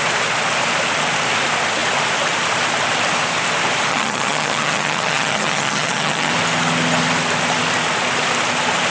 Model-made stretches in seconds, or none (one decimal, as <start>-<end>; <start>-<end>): 3.9-6.3